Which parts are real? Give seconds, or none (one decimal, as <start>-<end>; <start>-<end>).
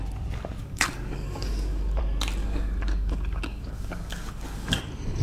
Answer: 0.0-0.6; 2.0-2.4; 4.8-5.2